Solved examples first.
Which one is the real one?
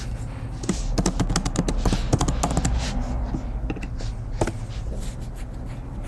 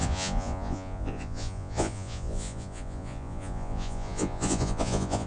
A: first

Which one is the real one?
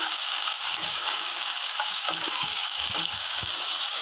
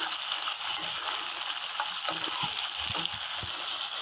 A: second